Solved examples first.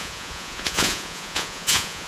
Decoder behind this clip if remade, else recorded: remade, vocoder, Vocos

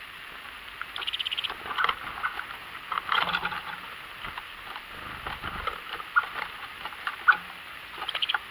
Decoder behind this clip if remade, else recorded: recorded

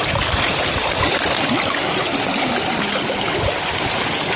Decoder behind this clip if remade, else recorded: recorded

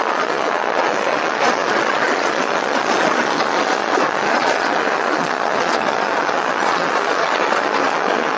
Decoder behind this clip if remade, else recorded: remade, vocoder, Vocos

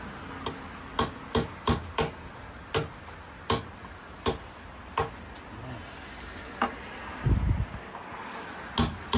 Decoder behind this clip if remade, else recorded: recorded